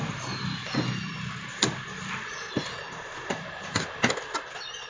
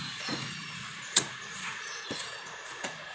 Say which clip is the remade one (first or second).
second